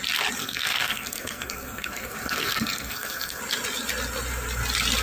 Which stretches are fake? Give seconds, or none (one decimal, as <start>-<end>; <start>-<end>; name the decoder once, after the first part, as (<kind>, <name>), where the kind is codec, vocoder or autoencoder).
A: 0.4-3.4 (codec, SNAC)